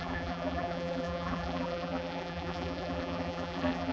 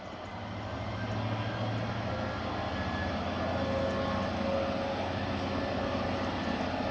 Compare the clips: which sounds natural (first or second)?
second